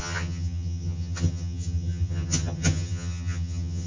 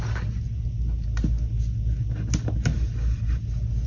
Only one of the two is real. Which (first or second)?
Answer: second